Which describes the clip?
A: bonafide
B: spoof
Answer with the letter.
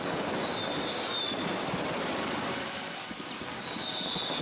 B